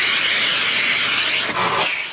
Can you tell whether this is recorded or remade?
recorded